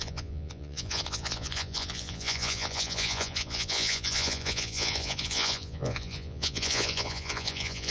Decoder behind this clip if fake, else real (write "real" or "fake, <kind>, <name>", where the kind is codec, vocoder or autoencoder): fake, vocoder, Vocos